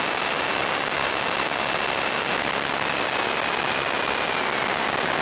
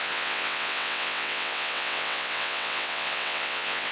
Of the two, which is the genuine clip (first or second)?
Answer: first